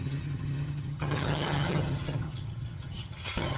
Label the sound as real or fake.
fake